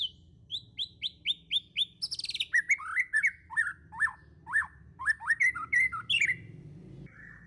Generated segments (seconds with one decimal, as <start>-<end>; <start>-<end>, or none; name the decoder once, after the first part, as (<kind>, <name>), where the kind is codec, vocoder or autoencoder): none